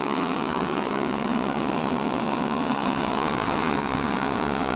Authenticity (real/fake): fake